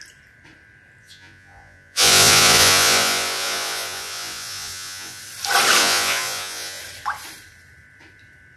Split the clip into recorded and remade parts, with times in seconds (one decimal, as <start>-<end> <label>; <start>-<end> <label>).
0.0-1.0 recorded; 1.0-5.2 remade; 5.2-5.8 recorded; 5.8-6.8 remade; 6.8-8.6 recorded